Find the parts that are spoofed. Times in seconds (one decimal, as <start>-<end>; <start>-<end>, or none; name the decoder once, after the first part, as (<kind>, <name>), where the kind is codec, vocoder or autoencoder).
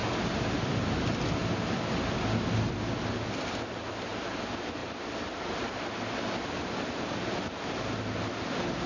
none